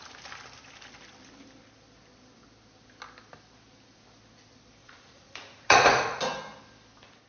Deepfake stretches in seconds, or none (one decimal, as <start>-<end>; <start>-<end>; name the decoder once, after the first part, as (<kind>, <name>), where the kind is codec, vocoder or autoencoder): 4.8-6.2 (vocoder, Vocos)